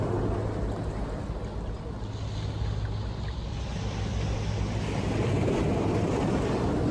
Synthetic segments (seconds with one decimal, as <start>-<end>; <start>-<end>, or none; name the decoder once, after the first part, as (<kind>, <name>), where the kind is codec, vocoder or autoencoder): none